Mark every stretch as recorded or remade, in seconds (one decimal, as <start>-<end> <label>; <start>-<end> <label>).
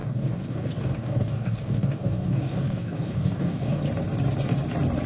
0.0-3.8 remade; 3.8-5.1 recorded